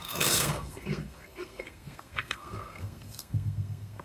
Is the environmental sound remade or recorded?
remade